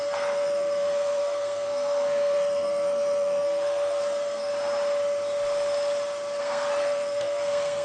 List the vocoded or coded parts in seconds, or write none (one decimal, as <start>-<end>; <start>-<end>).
0.0-4.5; 6.4-7.8